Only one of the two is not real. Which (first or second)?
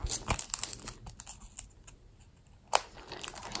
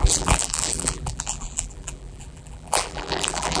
second